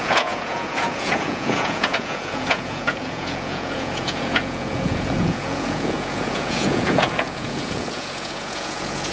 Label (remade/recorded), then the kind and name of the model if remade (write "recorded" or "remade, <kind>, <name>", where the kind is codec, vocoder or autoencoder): remade, vocoder, Vocos